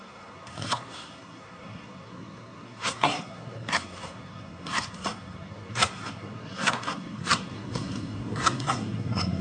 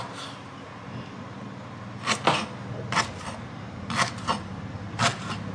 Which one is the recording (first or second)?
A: second